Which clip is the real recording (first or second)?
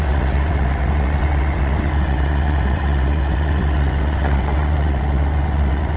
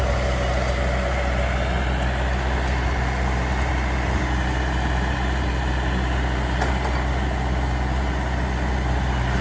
second